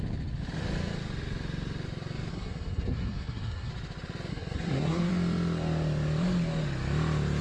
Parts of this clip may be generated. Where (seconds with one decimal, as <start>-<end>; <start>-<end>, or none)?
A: 2.3-3.7; 4.3-5.1